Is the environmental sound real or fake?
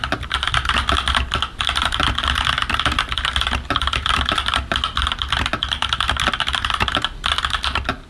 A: real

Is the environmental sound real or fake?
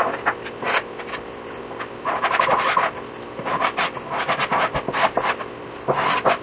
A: real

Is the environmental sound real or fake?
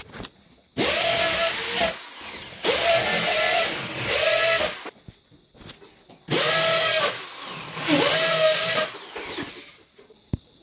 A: real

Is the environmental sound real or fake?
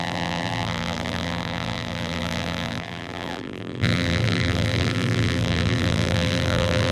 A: fake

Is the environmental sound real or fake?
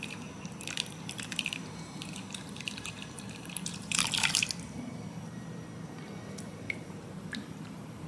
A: fake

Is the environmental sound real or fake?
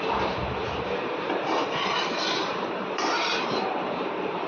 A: fake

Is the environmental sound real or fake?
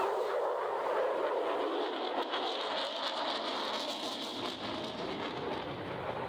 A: real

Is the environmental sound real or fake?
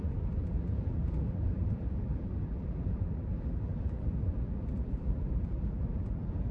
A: fake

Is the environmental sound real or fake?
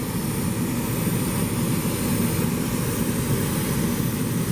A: real